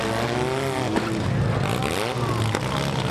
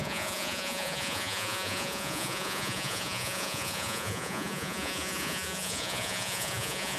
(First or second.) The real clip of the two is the first